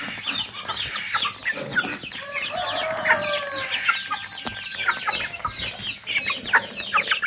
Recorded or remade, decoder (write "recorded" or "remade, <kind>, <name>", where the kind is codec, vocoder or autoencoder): recorded